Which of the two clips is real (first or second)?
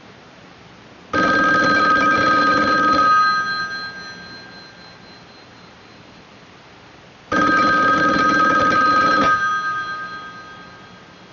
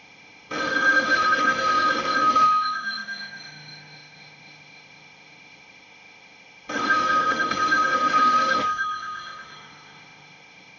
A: first